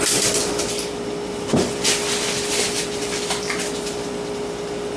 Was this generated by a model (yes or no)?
no